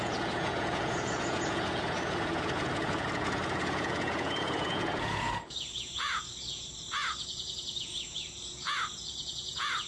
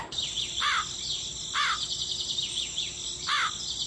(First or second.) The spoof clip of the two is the first